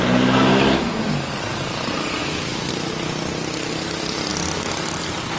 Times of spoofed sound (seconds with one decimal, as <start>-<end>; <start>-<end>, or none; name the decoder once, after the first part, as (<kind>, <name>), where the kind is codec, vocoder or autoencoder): 0.5-1.1 (autoencoder, DAC-VAE); 2.2-2.7